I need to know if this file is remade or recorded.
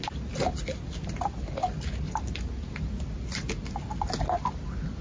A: recorded